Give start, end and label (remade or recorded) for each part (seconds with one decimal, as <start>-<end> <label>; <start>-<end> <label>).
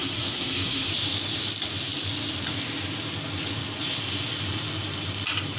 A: 0.0-0.9 remade; 0.9-5.6 recorded